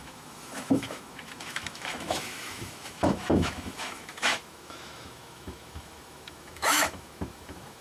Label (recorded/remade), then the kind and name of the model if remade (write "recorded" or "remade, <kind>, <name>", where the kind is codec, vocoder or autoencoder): remade, autoencoder, DAC-VAE